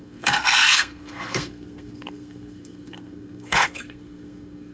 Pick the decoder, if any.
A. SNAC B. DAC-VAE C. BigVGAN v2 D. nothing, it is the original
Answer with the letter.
A